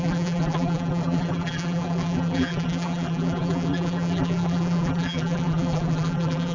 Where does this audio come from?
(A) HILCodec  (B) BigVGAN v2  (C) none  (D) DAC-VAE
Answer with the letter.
B